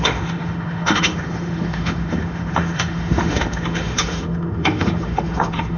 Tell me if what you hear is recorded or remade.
remade